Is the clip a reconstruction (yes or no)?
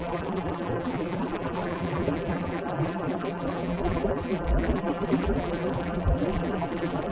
yes